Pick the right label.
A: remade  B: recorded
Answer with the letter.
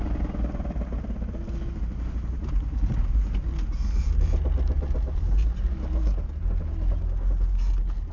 B